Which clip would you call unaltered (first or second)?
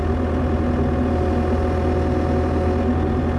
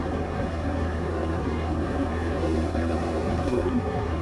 first